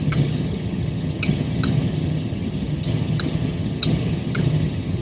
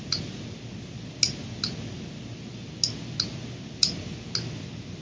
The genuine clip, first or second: second